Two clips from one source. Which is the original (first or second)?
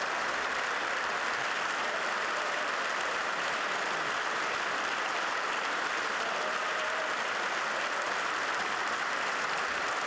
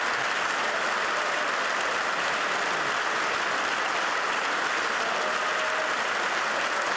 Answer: second